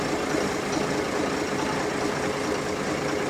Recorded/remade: recorded